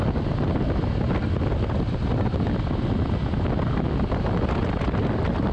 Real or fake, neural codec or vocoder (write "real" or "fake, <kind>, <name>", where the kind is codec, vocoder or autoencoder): real